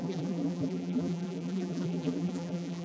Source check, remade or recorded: remade